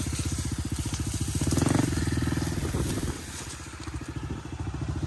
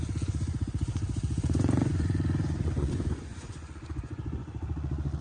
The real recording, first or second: first